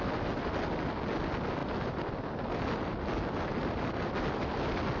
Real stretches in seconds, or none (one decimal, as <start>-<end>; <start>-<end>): 0.0-5.0